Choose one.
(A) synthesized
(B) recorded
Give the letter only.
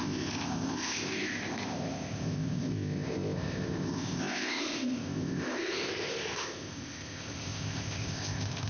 A